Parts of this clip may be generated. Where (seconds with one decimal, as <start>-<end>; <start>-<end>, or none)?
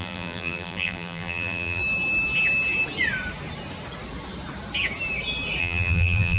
0.0-1.8; 5.6-6.4